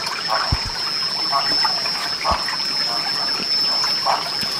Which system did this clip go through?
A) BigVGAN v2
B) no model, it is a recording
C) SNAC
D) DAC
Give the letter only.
B